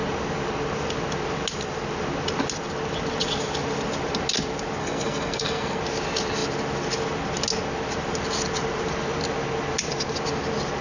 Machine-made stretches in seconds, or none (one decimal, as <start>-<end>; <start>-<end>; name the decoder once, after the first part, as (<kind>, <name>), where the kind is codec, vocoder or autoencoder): 4.8-5.8 (codec, SNAC)